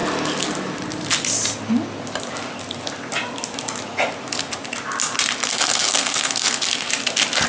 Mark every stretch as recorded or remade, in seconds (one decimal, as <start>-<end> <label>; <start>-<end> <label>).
0.0-5.5 recorded; 5.5-6.9 remade; 6.9-7.5 recorded